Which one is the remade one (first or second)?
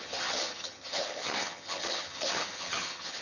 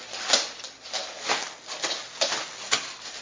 first